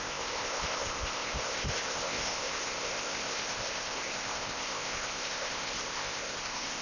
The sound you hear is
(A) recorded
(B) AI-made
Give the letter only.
B